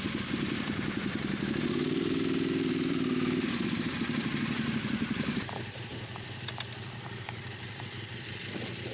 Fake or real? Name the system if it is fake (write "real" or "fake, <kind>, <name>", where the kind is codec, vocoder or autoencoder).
fake, vocoder, BigVGAN v2